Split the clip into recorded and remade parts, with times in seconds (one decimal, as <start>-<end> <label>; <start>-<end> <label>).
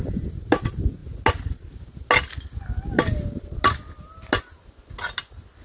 0.0-5.6 recorded